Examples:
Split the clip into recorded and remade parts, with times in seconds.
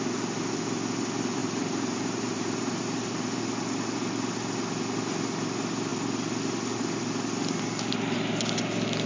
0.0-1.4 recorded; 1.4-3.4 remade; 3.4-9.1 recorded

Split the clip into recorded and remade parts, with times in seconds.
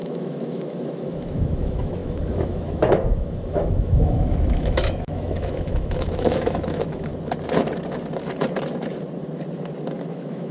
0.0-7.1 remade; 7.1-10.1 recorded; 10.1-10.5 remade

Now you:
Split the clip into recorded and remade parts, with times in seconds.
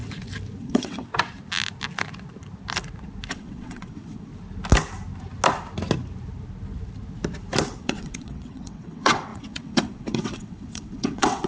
0.0-0.6 recorded; 0.6-1.1 remade; 1.1-3.3 recorded; 3.3-4.3 remade; 4.3-7.8 recorded; 7.8-11.5 remade